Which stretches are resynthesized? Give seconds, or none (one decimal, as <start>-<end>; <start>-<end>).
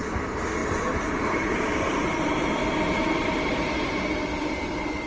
0.6-3.7